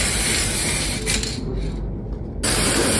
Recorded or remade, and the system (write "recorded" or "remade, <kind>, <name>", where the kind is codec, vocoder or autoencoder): recorded